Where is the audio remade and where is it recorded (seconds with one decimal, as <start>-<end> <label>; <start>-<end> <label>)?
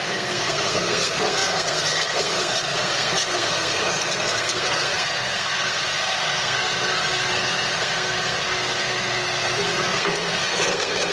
0.0-11.1 remade